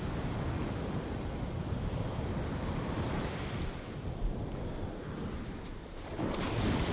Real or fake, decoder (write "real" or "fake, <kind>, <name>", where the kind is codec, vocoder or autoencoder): real